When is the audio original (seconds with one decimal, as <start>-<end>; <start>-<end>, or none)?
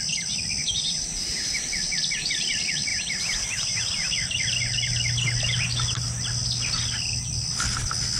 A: 0.0-0.6; 1.6-2.9; 4.1-8.2